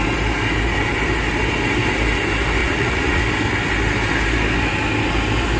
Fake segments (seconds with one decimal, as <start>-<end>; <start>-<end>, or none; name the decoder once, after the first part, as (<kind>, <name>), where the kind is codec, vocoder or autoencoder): 2.6-3.2 (vocoder, Vocos)